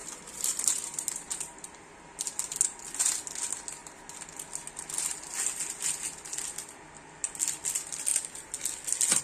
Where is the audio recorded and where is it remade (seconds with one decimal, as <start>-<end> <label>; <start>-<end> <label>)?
0.0-1.4 remade; 1.4-9.2 recorded